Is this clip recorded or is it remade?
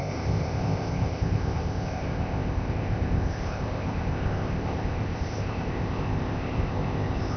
remade